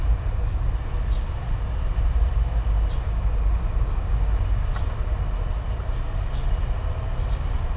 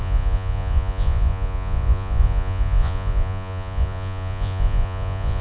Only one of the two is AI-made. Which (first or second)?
second